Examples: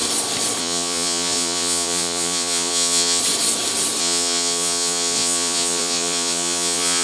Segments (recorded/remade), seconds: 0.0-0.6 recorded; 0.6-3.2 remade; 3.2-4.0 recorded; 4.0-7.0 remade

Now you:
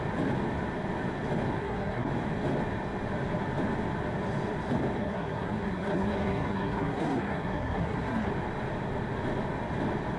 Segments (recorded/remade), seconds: 0.0-1.6 recorded; 1.6-2.1 remade; 2.1-5.0 recorded; 5.0-8.3 remade; 8.3-10.2 recorded

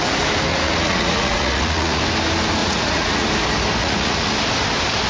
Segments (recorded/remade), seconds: 0.0-0.5 recorded; 0.5-2.0 remade; 2.0-2.6 recorded; 2.6-3.3 remade; 3.3-3.8 recorded; 3.8-4.3 remade; 4.3-5.1 recorded

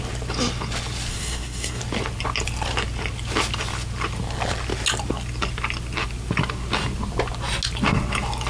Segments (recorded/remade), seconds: 0.0-1.1 recorded; 1.1-1.8 remade; 1.8-8.5 recorded

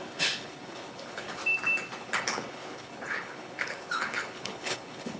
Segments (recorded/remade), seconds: 0.0-1.4 remade; 1.4-2.0 recorded; 2.0-5.2 remade